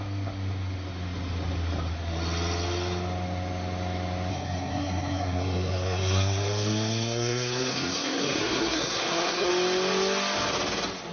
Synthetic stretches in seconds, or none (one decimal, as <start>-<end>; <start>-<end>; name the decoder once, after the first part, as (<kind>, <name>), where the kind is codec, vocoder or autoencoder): 4.3-9.5 (codec, SNAC)